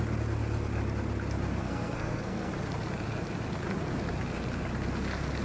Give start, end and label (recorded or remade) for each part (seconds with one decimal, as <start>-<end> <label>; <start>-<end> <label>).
0.0-1.6 recorded; 1.6-2.5 remade; 2.5-5.4 recorded